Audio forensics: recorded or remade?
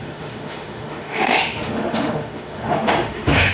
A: remade